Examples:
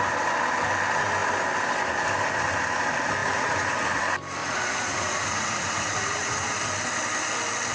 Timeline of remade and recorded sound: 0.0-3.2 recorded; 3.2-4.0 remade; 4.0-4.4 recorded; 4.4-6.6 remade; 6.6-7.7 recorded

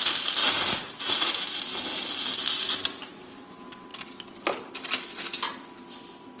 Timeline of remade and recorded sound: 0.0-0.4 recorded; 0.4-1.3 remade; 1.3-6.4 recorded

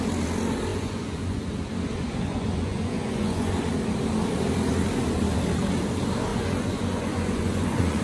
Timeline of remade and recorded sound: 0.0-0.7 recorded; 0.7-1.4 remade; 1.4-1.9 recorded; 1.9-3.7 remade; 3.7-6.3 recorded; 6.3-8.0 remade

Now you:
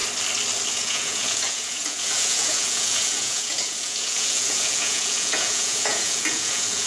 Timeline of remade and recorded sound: 0.0-0.7 recorded; 0.7-6.9 remade

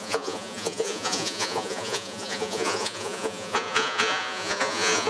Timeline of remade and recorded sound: 0.0-5.1 remade

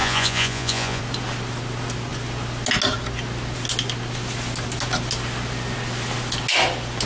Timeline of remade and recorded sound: 0.0-1.0 remade; 1.0-7.1 recorded

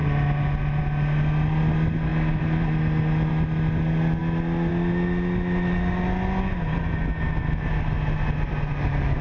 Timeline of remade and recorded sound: 0.0-9.2 recorded

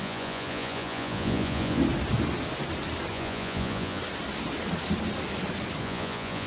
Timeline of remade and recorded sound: 0.0-1.8 remade; 1.8-3.1 recorded; 3.1-4.0 remade; 4.0-5.8 recorded; 5.8-6.5 remade